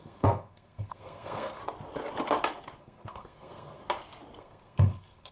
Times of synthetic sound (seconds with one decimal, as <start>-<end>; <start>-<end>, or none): 0.0-1.6; 2.8-3.8; 4.4-5.3